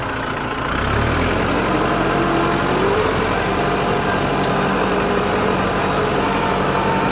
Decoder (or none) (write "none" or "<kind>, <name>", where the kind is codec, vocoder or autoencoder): none